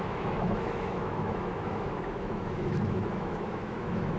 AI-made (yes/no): yes